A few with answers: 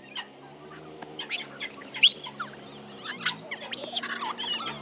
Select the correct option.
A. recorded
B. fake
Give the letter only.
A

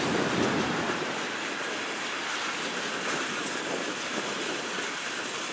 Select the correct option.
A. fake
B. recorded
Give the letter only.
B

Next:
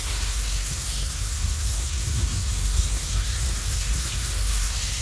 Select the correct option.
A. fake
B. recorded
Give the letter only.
A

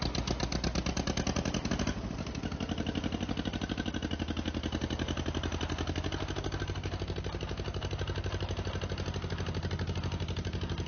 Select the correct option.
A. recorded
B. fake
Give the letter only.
A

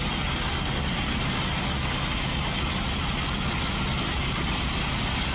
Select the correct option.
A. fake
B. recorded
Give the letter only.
B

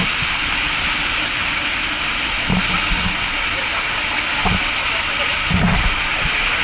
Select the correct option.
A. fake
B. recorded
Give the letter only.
B